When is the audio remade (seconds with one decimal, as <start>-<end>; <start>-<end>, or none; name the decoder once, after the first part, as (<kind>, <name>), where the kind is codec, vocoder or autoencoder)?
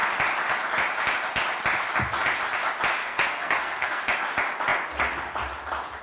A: 3.0-4.0 (codec, SNAC)